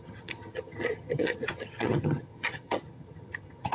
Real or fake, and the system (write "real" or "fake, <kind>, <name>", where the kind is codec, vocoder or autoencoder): fake, vocoder, HiFi-GAN